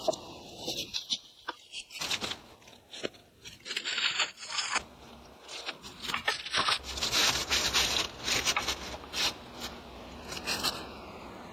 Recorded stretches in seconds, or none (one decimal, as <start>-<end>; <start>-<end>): 0.0-3.2; 3.8-11.5